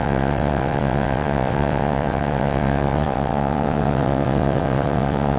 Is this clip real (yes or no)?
no